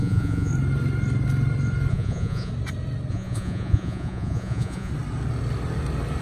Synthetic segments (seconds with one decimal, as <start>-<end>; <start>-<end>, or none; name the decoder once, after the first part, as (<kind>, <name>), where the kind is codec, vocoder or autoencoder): 0.0-0.5 (vocoder, Vocos); 1.9-2.5; 3.1-4.9

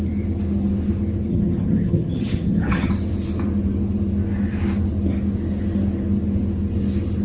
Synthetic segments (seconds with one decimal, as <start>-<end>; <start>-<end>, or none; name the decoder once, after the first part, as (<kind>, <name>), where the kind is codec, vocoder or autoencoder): 1.3-2.9 (vocoder, HiFi-GAN)

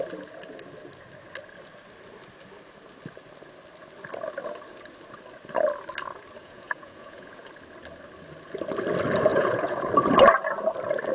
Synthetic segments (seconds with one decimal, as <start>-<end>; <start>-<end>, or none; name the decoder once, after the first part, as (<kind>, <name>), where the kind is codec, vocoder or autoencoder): 6.4-7.5 (vocoder, Vocos); 9.3-9.9